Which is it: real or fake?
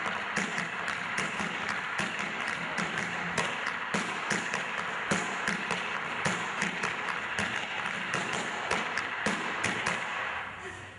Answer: fake